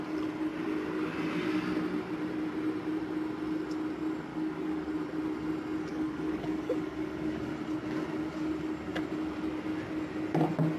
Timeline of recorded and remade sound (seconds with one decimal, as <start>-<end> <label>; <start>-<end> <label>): 0.0-4.3 recorded; 4.3-4.9 remade; 4.9-5.9 recorded; 5.9-7.5 remade; 7.5-10.8 recorded